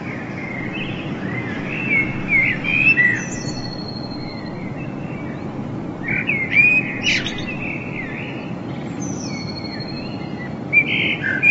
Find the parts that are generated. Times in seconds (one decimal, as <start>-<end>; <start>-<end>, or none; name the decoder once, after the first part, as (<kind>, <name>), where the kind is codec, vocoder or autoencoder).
none